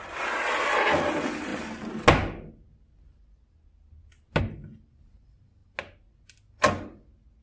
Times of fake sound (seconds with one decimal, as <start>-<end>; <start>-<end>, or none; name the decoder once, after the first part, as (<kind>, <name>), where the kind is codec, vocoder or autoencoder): none